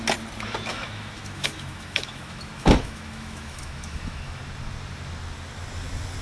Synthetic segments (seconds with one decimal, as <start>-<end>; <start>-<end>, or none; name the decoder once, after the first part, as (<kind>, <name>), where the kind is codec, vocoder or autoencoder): 0.7-4.4 (autoencoder, DAC-VAE)